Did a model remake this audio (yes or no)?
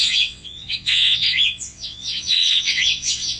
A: yes